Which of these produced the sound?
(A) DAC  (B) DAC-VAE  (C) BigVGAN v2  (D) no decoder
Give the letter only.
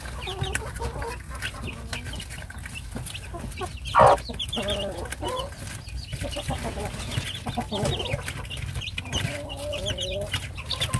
D